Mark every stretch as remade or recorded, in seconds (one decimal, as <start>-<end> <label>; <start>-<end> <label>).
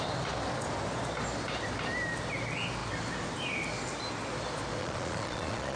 0.0-4.8 recorded; 4.8-5.8 remade